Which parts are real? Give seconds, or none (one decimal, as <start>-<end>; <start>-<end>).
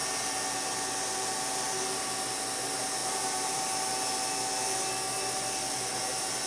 0.0-3.0; 3.6-6.5